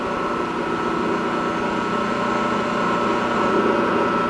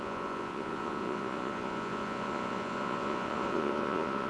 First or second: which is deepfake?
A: second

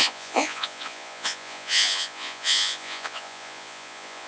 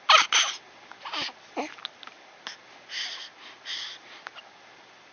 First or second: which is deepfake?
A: first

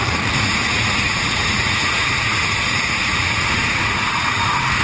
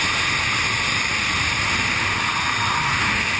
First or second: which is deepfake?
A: first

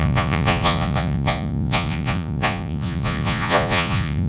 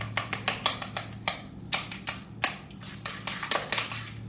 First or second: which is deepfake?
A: first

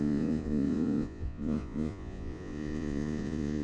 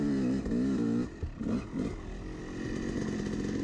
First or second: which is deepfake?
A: first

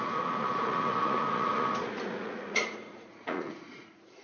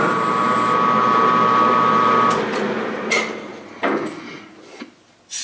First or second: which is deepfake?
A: first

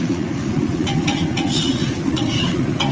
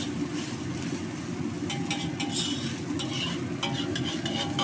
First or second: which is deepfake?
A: first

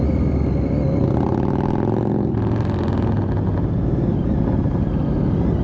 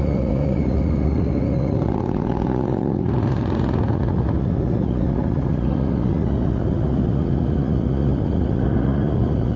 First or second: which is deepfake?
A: second